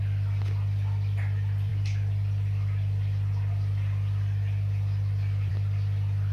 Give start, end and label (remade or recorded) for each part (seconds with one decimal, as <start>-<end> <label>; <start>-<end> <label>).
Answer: 0.0-6.3 recorded